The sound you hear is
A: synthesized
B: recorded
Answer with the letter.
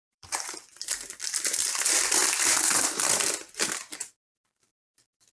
A